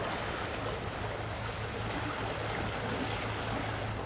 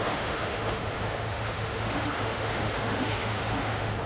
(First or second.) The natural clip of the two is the first